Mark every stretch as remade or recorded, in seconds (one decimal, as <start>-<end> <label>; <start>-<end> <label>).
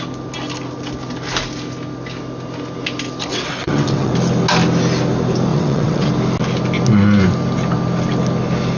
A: 0.0-3.3 recorded; 3.3-4.1 remade; 4.1-5.5 recorded; 5.5-6.1 remade; 6.1-8.8 recorded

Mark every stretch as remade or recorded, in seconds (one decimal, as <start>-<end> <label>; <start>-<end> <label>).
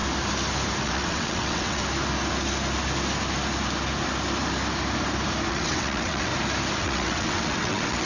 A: 0.0-0.8 recorded; 0.8-1.8 remade; 1.8-5.5 recorded; 5.5-6.3 remade; 6.3-6.8 recorded; 6.8-8.1 remade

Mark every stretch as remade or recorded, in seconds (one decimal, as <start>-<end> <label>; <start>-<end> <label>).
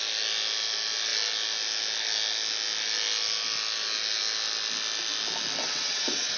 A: 0.0-5.6 recorded; 5.6-6.4 remade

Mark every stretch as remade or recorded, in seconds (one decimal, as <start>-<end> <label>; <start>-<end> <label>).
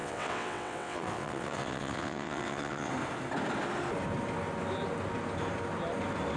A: 0.0-2.9 remade; 2.9-6.4 recorded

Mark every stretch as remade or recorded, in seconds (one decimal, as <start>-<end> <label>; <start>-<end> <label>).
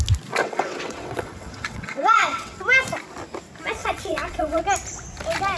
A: 0.0-0.4 recorded; 0.4-2.6 remade; 2.6-3.8 recorded; 3.8-4.6 remade; 4.6-5.6 recorded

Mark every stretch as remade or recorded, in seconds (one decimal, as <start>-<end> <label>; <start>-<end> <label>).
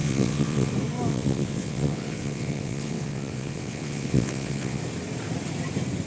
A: 0.0-0.7 remade; 0.7-1.1 recorded; 1.1-4.8 remade; 4.8-6.1 recorded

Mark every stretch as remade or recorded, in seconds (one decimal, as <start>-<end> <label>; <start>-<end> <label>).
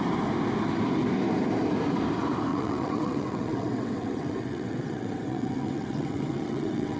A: 0.0-2.5 recorded; 2.5-7.0 remade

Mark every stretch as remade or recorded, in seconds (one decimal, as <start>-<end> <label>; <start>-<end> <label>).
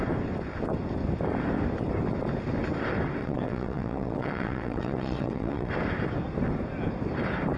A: 0.0-3.2 recorded; 3.2-5.7 remade; 5.7-7.6 recorded